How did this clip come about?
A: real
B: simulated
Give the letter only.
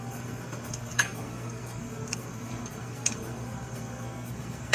B